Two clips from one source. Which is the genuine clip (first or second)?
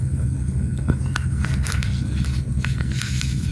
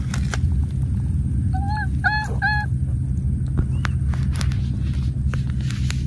second